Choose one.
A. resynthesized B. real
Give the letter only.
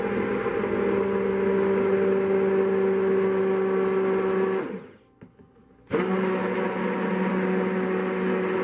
B